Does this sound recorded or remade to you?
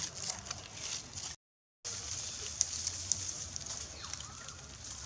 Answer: recorded